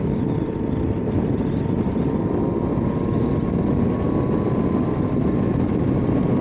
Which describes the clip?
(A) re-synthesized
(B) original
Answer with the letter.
B